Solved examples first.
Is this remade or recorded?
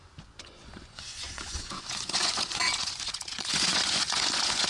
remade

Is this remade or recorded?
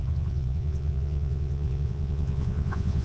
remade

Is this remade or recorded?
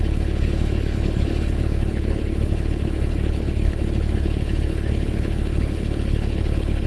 remade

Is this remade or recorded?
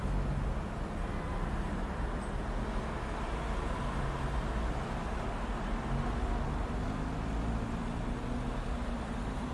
recorded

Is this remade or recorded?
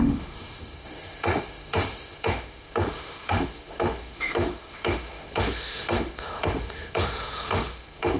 remade